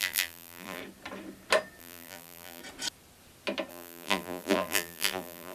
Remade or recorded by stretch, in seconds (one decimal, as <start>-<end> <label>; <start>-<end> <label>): 0.0-0.8 remade; 0.8-1.8 recorded; 1.8-2.6 remade; 2.6-3.7 recorded; 3.7-5.5 remade